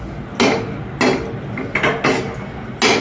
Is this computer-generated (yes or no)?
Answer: no